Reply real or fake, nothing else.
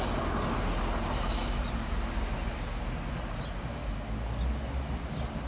real